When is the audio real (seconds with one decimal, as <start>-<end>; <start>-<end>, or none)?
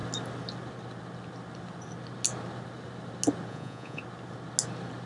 0.0-3.5; 4.0-5.1